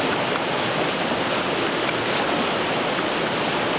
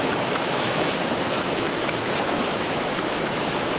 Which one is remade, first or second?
second